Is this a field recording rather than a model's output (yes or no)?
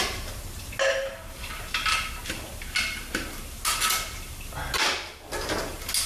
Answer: yes